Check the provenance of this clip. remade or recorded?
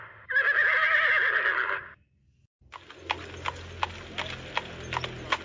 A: recorded